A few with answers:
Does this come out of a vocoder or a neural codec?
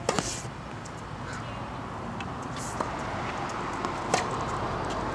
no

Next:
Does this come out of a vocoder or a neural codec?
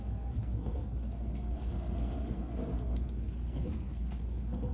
yes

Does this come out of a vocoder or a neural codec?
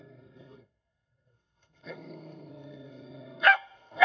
yes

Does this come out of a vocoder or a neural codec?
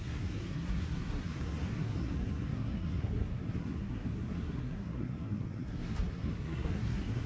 yes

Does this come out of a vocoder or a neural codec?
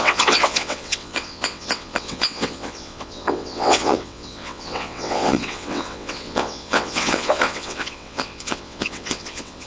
yes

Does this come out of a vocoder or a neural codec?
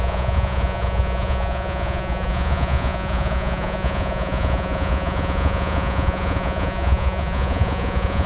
yes